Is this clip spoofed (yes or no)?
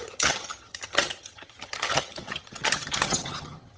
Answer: yes